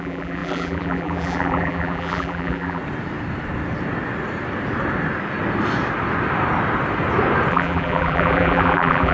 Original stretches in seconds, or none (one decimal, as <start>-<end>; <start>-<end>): 2.8-7.5